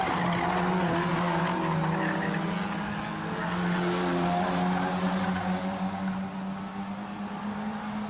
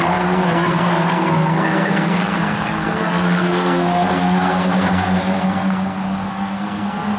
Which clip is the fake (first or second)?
second